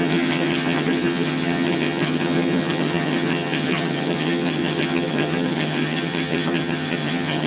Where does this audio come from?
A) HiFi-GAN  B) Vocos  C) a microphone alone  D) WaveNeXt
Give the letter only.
A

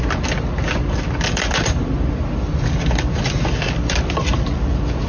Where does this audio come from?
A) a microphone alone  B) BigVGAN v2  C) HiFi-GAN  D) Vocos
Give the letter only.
A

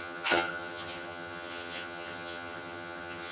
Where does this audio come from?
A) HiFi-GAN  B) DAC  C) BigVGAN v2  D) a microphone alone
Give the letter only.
A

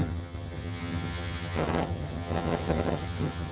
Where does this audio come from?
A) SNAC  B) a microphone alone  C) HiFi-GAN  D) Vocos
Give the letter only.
C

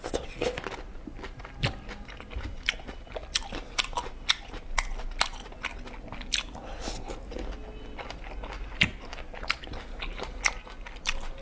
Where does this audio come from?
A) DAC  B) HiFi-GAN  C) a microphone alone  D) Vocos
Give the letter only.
C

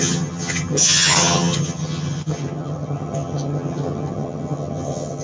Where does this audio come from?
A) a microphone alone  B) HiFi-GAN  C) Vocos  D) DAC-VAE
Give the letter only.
B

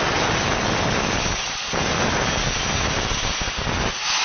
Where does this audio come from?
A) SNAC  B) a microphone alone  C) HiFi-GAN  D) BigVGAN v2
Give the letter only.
B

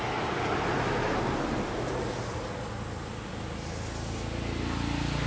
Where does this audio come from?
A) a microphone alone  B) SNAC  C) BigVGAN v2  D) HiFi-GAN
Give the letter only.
A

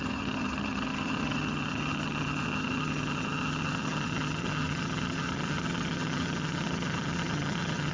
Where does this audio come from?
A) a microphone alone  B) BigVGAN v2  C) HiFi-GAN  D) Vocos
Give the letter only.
C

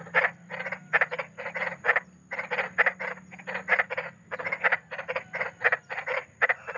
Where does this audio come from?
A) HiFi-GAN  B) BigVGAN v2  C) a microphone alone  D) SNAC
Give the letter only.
C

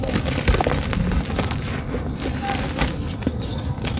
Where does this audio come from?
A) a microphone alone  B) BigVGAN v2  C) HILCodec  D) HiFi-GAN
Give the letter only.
A